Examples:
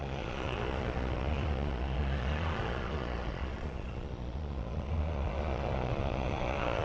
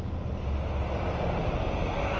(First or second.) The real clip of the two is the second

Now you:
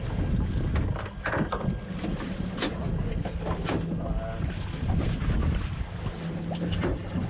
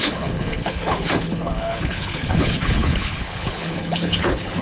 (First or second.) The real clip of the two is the first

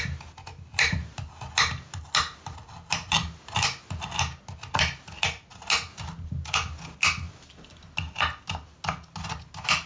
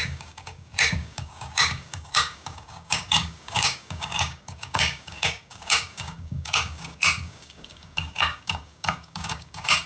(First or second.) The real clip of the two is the first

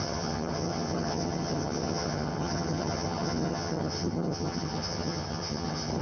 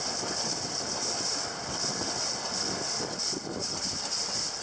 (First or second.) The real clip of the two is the second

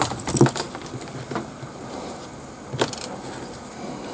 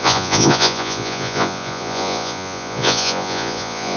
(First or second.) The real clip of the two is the first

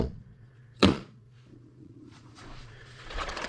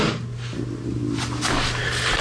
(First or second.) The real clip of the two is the second